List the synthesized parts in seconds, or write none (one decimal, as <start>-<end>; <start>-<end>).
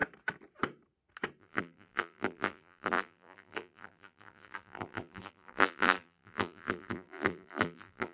1.4-8.1